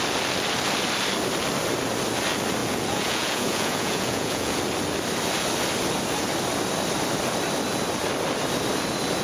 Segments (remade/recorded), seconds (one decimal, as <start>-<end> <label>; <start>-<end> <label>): 0.0-2.6 recorded; 2.6-4.6 remade; 4.6-9.2 recorded